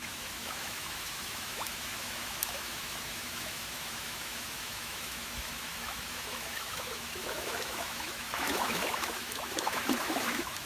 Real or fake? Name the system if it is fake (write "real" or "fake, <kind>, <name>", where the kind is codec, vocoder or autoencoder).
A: fake, autoencoder, DAC-VAE